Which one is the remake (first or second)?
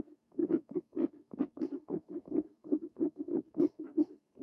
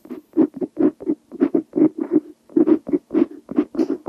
first